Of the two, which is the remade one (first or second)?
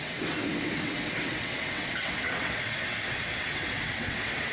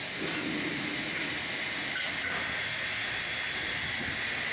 first